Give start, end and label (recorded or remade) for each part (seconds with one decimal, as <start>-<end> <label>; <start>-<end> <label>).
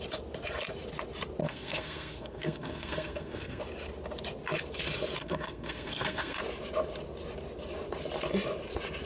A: 0.0-1.4 recorded; 1.4-3.6 remade; 3.6-5.2 recorded; 5.2-6.4 remade; 6.4-9.1 recorded